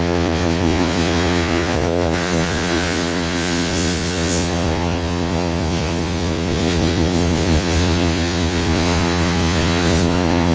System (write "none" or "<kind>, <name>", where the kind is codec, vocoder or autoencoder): vocoder, Vocos